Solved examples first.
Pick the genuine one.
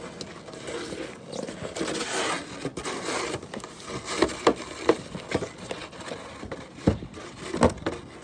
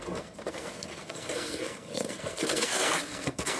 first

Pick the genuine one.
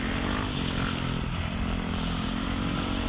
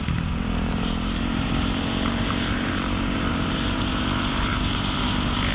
first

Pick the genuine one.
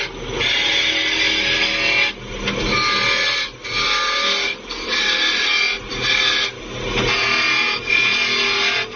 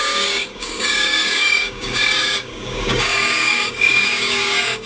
first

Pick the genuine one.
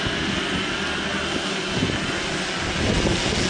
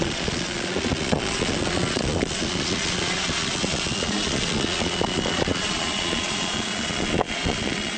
first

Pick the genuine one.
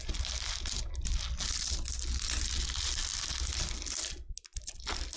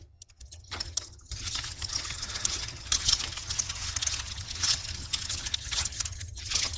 first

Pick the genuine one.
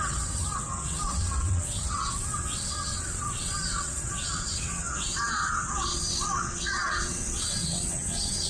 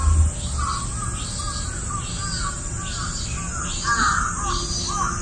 second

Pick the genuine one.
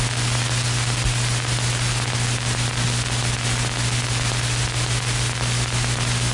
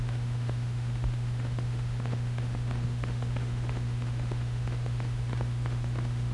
first